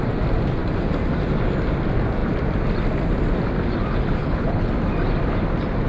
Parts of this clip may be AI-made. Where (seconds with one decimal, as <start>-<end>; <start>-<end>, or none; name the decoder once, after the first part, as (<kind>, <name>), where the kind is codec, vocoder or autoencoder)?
4.2-4.7 (codec, HILCodec)